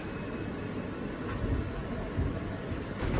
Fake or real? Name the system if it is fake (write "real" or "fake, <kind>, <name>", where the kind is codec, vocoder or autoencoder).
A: real